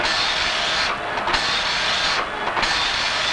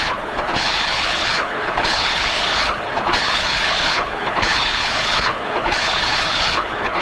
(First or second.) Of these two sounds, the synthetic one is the second